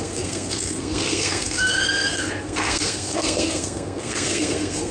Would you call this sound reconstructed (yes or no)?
yes